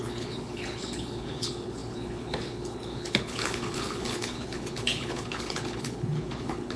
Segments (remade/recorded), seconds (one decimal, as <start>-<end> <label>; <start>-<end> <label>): 0.0-6.8 remade